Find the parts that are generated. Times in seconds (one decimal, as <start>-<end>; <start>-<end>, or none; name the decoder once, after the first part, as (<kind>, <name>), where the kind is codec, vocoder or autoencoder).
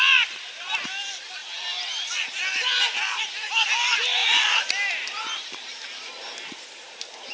0.0-4.2 (vocoder, BigVGAN v2); 4.9-7.3